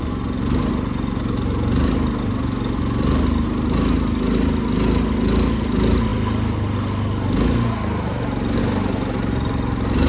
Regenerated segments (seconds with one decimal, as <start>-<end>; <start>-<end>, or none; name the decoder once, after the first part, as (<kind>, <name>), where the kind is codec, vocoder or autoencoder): none

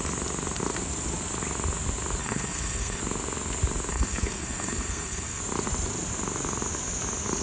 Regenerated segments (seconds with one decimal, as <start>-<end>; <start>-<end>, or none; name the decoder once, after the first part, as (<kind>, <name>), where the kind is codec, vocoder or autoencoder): 2.2-3.0 (codec, SNAC); 3.9-5.4

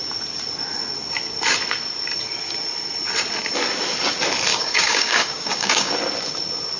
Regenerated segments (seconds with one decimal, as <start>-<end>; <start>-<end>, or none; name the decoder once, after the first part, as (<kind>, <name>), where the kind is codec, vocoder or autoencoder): 4.5-5.9 (codec, DAC)

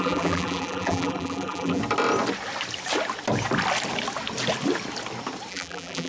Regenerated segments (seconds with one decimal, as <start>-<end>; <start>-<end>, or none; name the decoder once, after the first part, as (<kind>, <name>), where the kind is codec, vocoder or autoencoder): 0.0-1.8 (vocoder, BigVGAN v2); 5.5-6.1

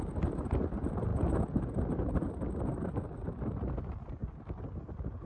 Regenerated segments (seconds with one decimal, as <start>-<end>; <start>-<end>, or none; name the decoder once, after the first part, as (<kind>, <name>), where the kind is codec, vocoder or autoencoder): none

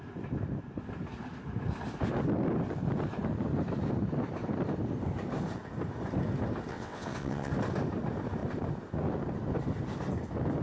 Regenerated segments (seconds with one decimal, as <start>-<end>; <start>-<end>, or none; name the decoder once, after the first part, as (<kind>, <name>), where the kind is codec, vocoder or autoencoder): 6.7-7.5 (vocoder, WaveNeXt)